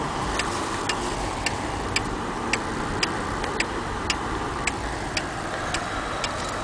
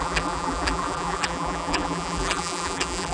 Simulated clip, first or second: second